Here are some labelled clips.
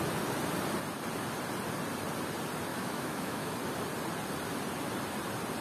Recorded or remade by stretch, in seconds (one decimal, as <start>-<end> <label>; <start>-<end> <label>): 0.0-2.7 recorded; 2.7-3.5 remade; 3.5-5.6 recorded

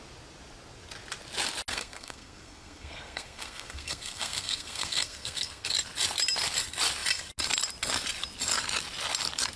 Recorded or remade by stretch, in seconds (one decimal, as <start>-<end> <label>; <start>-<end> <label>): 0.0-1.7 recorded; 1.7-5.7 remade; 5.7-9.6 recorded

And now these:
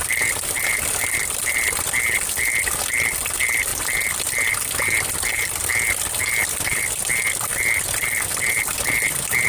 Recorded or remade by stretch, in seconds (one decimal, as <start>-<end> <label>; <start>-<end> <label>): 0.0-9.5 recorded